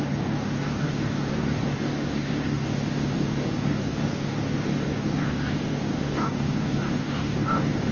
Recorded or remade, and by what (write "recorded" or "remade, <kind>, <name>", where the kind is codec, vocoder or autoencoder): remade, codec, DAC